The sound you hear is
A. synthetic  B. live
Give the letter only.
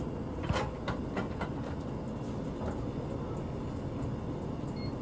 B